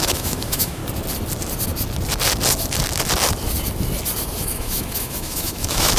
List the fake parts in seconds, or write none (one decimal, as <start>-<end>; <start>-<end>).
0.0-0.8; 4.4-6.0